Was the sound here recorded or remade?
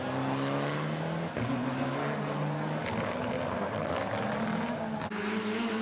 recorded